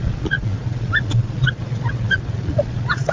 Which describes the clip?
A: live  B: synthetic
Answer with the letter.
B